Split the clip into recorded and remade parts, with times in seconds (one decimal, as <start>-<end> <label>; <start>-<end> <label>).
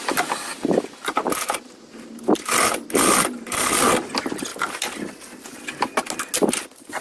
0.0-7.0 recorded